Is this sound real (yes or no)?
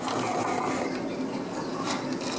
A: yes